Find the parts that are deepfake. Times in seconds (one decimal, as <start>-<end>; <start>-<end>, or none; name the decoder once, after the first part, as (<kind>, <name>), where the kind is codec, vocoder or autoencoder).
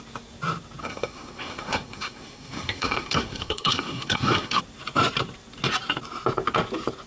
0.8-4.6 (codec, SNAC)